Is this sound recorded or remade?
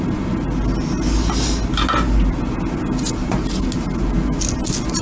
recorded